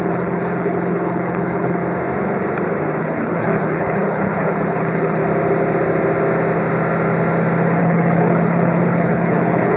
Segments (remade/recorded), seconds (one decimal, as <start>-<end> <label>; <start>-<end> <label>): 0.0-1.8 remade; 1.8-3.0 recorded; 3.0-5.2 remade; 5.2-7.8 recorded; 7.8-9.8 remade